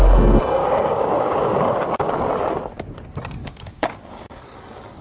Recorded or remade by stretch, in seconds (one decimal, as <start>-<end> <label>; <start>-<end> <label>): 0.0-0.6 recorded; 0.6-2.1 remade; 2.1-3.4 recorded; 3.4-4.4 remade; 4.4-5.0 recorded